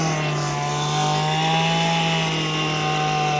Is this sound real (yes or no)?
yes